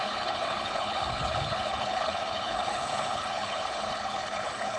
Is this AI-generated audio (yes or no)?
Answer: yes